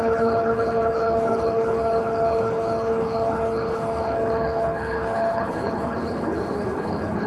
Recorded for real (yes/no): no